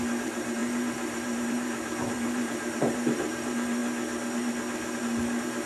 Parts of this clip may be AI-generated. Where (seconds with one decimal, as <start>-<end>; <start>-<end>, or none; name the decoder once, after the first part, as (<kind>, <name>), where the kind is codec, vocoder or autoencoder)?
0.0-3.8 (vocoder, BigVGAN v2); 5.0-5.7